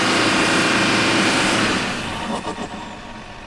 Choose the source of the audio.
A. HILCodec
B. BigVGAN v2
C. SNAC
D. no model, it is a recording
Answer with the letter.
D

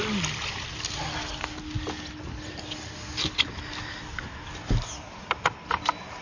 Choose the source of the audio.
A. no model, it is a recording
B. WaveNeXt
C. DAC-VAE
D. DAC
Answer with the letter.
A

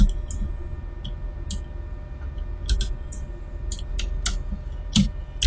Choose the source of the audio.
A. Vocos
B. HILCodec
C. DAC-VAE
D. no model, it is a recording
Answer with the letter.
D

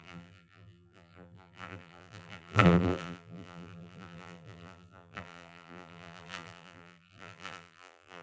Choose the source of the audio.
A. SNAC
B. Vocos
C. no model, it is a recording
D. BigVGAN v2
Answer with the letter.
D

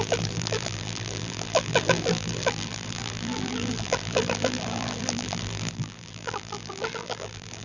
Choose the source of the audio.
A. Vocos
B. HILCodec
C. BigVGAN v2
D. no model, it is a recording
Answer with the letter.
C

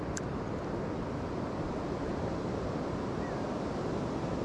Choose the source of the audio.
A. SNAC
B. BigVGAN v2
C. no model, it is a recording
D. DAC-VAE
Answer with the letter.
C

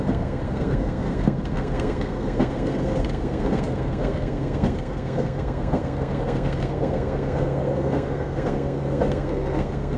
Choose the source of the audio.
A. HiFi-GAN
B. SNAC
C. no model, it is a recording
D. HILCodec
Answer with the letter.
B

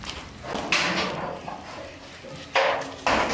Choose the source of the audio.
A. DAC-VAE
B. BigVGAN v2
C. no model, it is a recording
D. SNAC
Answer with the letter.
C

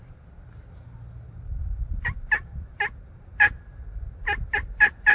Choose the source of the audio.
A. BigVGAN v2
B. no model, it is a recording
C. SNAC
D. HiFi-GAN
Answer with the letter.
B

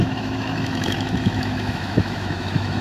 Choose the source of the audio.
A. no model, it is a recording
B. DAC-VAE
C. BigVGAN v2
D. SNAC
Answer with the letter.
B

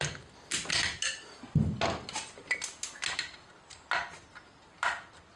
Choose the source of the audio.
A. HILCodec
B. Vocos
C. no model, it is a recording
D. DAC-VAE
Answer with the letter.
C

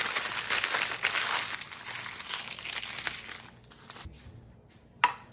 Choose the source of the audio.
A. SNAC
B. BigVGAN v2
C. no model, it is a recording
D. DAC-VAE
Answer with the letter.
C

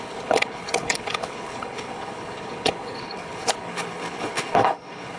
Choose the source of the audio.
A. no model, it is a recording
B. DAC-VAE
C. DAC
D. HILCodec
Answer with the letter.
D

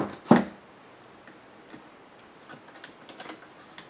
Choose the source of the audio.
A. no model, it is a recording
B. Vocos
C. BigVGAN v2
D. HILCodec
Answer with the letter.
A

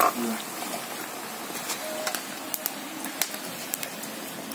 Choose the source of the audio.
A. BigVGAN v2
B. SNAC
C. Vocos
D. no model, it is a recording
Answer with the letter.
D